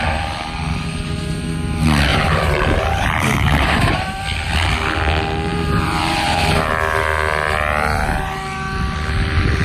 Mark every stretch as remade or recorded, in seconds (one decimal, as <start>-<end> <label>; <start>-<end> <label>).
0.0-2.1 recorded; 2.1-4.2 remade; 4.2-5.5 recorded; 5.5-6.7 remade; 6.7-9.6 recorded